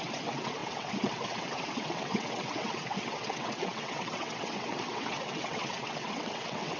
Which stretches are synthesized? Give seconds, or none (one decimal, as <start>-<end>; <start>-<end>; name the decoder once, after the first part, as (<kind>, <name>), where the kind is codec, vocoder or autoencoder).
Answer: 0.0-6.8 (vocoder, WaveNeXt)